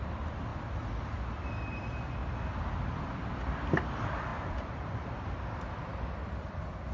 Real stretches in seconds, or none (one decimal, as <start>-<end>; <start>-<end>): 0.5-1.5; 2.2-2.8